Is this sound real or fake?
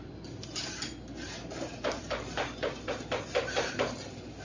real